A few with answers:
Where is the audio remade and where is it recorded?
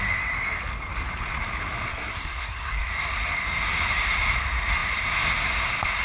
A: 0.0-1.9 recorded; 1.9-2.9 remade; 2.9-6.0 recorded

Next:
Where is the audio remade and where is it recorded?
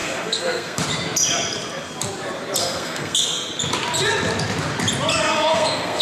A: 0.0-0.8 remade; 0.8-2.6 recorded; 2.6-3.5 remade; 3.5-5.1 recorded; 5.1-6.0 remade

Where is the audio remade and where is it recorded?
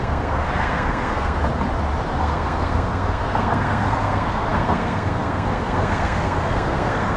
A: 0.0-1.4 remade; 1.4-2.2 recorded; 2.2-7.2 remade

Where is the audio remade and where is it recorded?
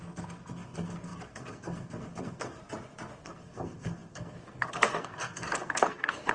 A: 0.0-2.6 remade; 2.6-3.2 recorded; 3.2-6.3 remade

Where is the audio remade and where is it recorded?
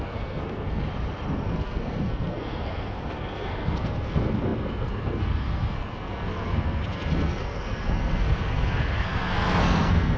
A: 0.0-0.8 remade; 0.8-1.3 recorded; 1.3-10.2 remade